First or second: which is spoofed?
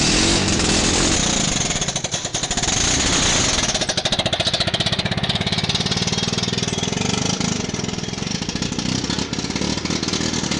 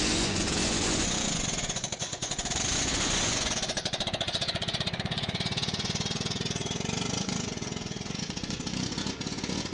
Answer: second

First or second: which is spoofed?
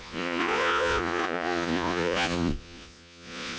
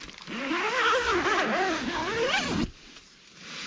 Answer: first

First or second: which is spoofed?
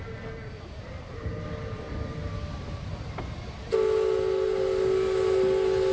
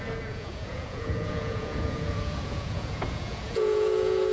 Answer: second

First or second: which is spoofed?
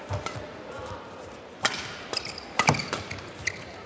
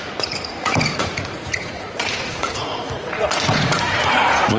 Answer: second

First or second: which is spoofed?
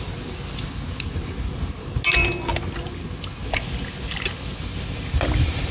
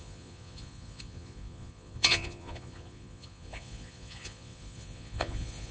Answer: second